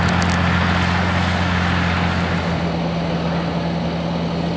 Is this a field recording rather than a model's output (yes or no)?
yes